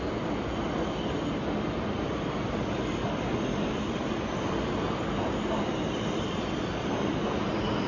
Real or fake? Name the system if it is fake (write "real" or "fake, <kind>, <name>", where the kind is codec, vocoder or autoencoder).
real